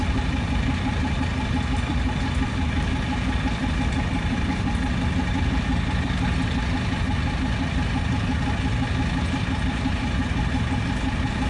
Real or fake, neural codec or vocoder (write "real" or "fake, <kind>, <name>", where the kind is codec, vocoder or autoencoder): fake, vocoder, BigVGAN v2